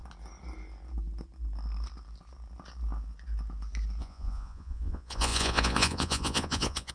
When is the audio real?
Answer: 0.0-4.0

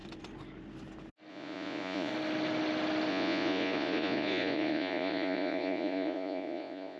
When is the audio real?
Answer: 0.0-1.3; 2.1-3.1

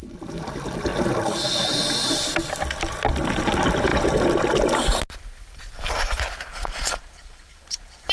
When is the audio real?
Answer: 0.0-6.5

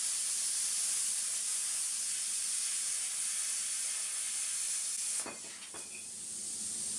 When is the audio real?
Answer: 0.0-1.5; 2.7-7.0

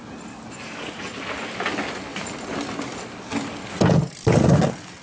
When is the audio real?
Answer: 0.0-5.0